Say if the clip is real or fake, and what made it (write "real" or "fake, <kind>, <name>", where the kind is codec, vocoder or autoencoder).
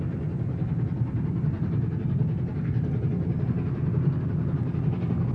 real